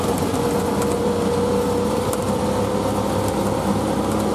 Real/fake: real